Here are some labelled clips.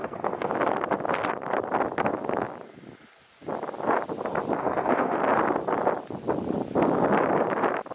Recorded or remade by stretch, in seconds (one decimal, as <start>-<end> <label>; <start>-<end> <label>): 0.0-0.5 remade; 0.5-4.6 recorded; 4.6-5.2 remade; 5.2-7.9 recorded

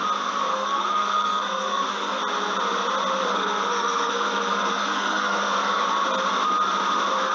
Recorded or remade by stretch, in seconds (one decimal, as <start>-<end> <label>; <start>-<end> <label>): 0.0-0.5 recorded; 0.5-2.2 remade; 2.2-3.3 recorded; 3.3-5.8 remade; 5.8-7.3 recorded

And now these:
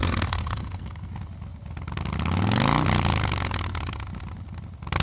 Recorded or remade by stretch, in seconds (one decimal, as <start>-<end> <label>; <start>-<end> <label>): 0.0-1.1 remade; 1.1-5.0 recorded

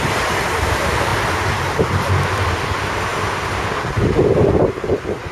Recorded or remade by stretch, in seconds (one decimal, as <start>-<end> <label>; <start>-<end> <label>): 0.0-5.3 recorded

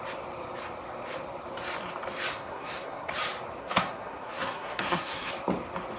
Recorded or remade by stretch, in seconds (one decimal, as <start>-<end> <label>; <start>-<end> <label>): 0.0-2.3 recorded; 2.3-3.1 remade; 3.1-3.6 recorded; 3.6-5.3 remade; 5.3-6.0 recorded

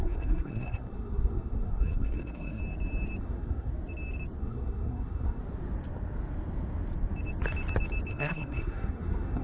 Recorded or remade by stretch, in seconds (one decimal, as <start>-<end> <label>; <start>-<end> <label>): 0.0-2.6 remade; 2.6-3.2 recorded; 3.2-3.7 remade; 3.7-4.4 recorded; 4.4-5.4 remade; 5.4-8.1 recorded; 8.1-9.4 remade

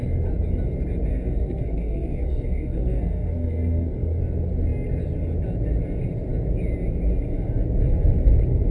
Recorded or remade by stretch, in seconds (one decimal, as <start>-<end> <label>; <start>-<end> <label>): 0.0-1.1 recorded; 1.1-4.2 remade; 4.2-8.7 recorded